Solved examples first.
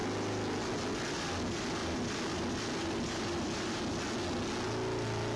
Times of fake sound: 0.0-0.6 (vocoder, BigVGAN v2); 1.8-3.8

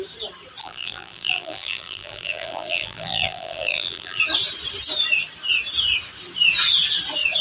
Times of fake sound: 0.6-4.2 (vocoder, BigVGAN v2)

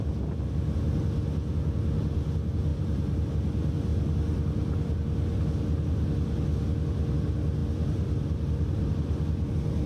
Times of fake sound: 2.7-3.3 (vocoder, BigVGAN v2); 7.6-9.5

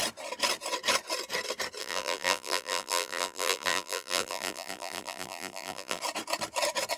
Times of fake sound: 1.8-6.0 (vocoder, BigVGAN v2)

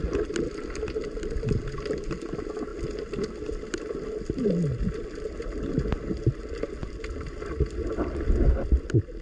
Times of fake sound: none

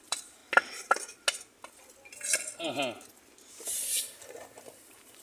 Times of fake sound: 0.0-0.4 (vocoder, BigVGAN v2); 3.5-5.2

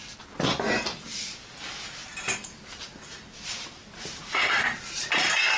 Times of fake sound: 0.9-1.6 (vocoder, BigVGAN v2); 2.0-3.0; 3.5-4.8